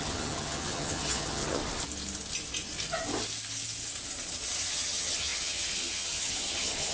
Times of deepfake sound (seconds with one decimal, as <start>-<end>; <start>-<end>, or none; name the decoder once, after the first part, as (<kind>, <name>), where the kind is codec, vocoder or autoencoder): 0.0-1.6 (vocoder, HiFi-GAN); 4.7-6.9